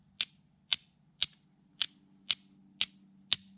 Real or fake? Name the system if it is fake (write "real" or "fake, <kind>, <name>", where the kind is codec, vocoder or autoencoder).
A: real